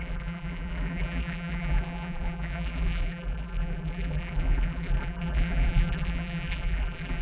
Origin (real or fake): fake